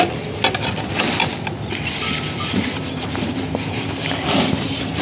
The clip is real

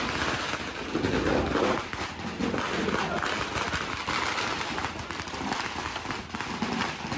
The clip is real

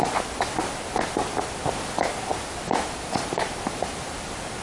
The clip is real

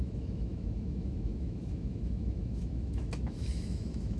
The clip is fake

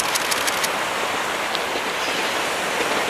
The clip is real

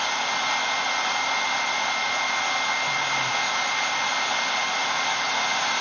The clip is real